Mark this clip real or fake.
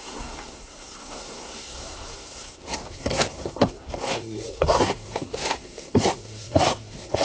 fake